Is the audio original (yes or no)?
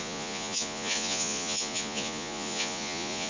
no